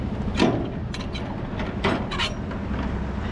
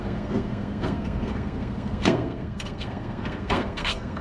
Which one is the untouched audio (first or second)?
first